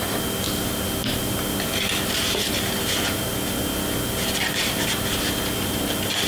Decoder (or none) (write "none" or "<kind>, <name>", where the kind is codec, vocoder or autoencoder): none